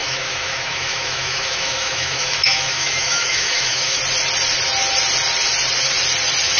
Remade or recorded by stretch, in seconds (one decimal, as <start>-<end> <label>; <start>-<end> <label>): 0.0-4.0 remade; 4.0-6.6 recorded